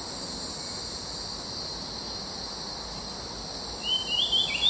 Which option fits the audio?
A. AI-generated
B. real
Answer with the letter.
B